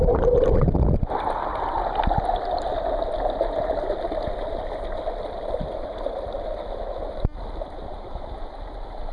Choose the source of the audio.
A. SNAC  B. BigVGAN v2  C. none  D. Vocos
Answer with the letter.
C